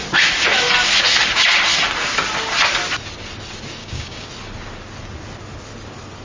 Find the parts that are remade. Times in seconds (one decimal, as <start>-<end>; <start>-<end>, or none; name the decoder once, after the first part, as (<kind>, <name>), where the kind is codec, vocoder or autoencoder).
3.8-4.3 (codec, DAC)

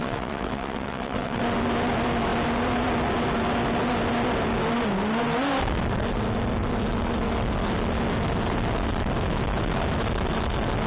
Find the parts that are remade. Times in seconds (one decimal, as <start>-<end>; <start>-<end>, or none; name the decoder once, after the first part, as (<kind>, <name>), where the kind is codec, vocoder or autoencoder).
0.0-1.4 (vocoder, WaveNeXt)

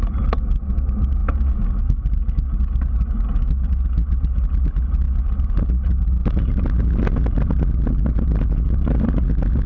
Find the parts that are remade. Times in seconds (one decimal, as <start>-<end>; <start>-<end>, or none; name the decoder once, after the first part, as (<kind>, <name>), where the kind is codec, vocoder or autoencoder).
none

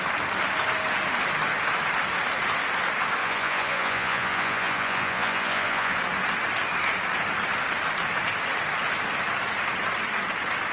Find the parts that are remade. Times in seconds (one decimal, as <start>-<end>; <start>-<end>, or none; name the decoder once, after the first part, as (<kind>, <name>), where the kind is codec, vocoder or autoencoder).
3.2-5.9 (vocoder, Vocos)

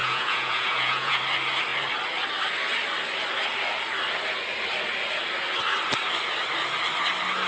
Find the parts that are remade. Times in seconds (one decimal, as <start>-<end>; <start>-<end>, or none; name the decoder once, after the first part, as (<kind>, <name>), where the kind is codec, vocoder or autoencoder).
0.0-1.2 (vocoder, Vocos)